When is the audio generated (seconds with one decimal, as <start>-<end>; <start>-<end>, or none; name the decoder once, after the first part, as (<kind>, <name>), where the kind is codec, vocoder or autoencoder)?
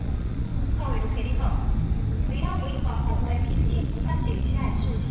0.0-0.5 (vocoder, Vocos); 2.2-4.5